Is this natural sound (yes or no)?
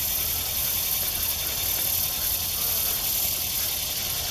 yes